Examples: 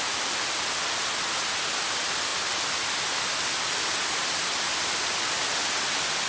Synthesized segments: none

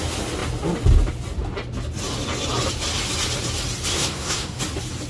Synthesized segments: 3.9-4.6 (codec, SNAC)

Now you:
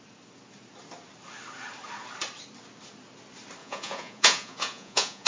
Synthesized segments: 3.6-5.3 (vocoder, Vocos)